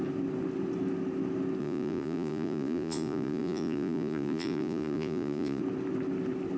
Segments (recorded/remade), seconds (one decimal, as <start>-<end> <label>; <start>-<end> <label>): 0.0-1.6 recorded; 1.6-5.6 remade; 5.6-6.6 recorded